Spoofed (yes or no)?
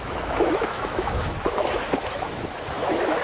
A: yes